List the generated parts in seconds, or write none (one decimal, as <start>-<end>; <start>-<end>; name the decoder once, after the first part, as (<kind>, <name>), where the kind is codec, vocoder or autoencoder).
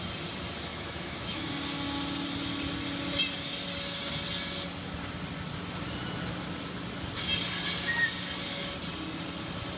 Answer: 0.7-1.5 (autoencoder, DAC-VAE)